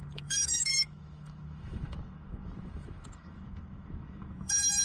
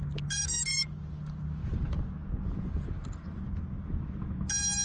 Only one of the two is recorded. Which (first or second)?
second